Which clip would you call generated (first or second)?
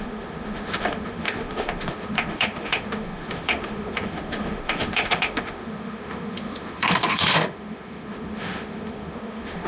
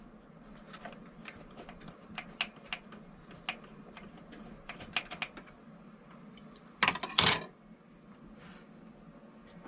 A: first